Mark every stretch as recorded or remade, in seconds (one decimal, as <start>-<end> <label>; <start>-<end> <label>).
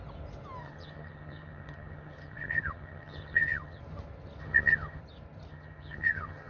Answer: 0.0-0.6 recorded; 0.6-3.8 remade; 3.8-4.4 recorded; 4.4-5.0 remade; 5.0-5.5 recorded; 5.5-6.5 remade